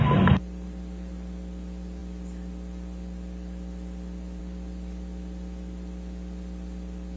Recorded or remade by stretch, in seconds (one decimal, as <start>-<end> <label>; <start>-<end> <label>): 0.0-7.2 recorded